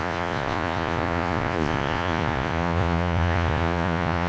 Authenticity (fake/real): fake